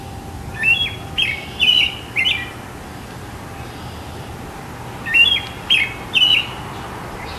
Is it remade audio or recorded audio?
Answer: recorded